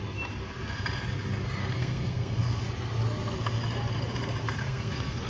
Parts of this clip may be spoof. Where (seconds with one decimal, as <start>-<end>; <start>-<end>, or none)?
1.6-2.6; 4.6-5.3